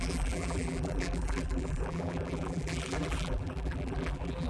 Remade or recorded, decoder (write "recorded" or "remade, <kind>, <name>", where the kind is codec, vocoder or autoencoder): remade, vocoder, BigVGAN v2